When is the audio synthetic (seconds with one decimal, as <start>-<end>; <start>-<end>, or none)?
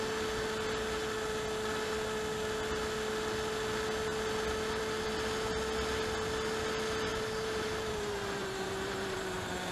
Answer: 7.1-9.7